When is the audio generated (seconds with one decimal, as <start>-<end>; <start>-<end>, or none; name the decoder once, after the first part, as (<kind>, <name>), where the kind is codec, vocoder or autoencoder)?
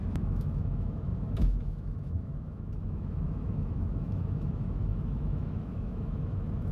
0.0-6.7 (autoencoder, DAC-VAE)